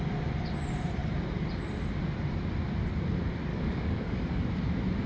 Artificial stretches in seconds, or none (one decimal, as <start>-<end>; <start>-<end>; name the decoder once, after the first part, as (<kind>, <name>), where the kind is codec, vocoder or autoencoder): 3.5-4.5 (codec, DAC)